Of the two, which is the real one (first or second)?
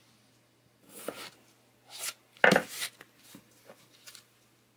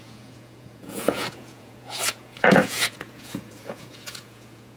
first